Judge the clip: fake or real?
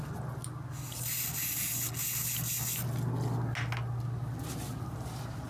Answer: real